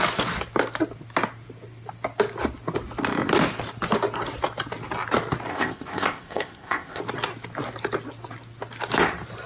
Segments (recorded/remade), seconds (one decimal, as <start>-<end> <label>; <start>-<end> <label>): 0.0-5.5 recorded; 5.5-7.0 remade; 7.0-9.5 recorded